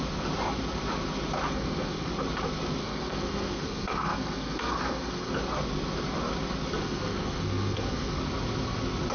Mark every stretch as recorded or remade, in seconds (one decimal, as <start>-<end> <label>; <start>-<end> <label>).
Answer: 0.0-1.5 recorded; 1.5-2.1 remade; 2.1-2.8 recorded; 2.8-5.3 remade; 5.3-6.8 recorded; 6.8-8.2 remade; 8.2-9.1 recorded